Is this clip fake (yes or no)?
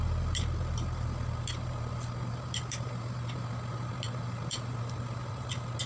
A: no